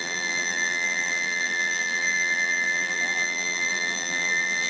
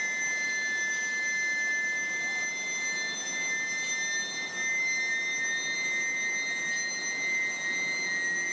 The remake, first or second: first